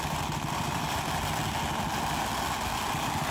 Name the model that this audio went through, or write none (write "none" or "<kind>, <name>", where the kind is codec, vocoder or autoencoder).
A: none